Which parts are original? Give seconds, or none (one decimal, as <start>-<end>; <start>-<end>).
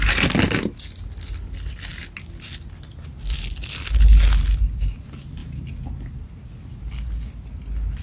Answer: 0.0-5.4; 6.0-8.0